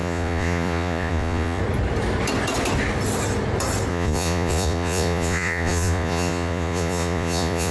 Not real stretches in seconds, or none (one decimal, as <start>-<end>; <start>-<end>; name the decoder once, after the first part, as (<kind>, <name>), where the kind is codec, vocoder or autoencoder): 0.0-1.6 (vocoder, Vocos); 3.9-7.7